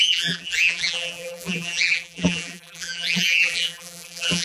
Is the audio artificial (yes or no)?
yes